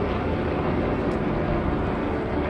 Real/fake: real